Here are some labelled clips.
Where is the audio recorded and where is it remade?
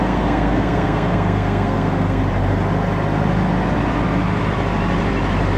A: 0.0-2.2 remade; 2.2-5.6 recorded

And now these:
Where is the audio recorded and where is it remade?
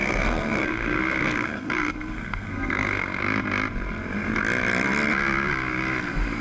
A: 0.0-3.2 remade; 3.2-6.4 recorded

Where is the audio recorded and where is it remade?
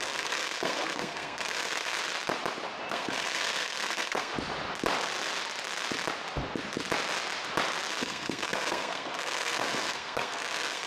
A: 0.0-2.0 remade; 2.0-2.9 recorded; 2.9-4.3 remade; 4.3-7.9 recorded; 7.9-10.9 remade